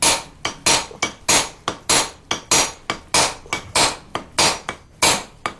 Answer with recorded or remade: recorded